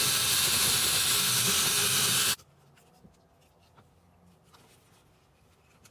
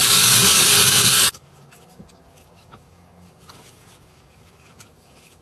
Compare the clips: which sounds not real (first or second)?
second